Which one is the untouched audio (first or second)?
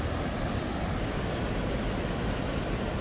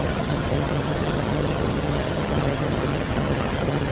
first